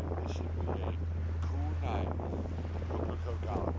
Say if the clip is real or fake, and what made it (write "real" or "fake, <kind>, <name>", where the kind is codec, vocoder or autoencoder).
real